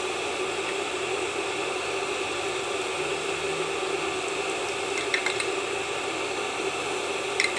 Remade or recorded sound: recorded